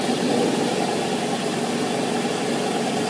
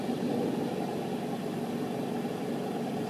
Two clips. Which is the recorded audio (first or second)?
first